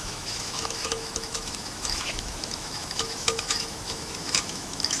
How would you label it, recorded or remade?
remade